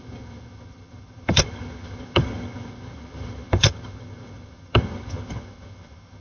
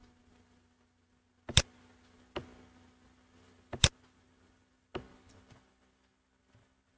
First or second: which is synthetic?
first